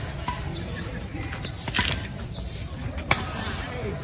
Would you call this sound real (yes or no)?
yes